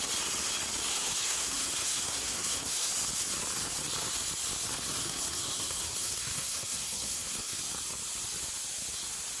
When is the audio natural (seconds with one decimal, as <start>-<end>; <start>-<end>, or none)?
0.0-0.9; 2.9-5.0; 7.6-9.4